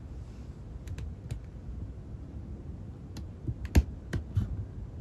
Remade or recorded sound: recorded